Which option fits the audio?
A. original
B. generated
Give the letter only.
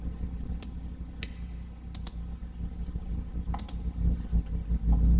A